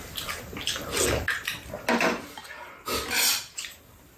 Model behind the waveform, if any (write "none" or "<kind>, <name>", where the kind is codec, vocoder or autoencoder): none